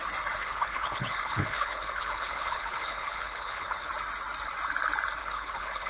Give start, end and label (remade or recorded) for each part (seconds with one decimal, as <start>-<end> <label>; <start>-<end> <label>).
0.0-0.4 recorded; 0.4-3.9 remade; 3.9-5.2 recorded; 5.2-5.9 remade